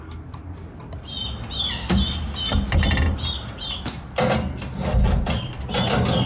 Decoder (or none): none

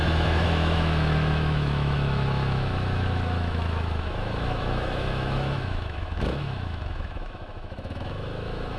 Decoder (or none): autoencoder, DAC-VAE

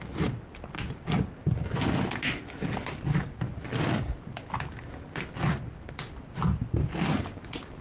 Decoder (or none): none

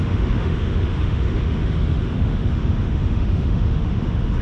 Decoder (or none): autoencoder, DAC-VAE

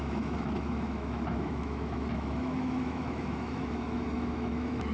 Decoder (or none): autoencoder, DAC-VAE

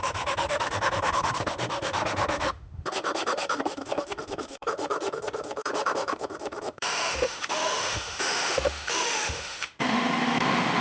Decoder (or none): autoencoder, DAC-VAE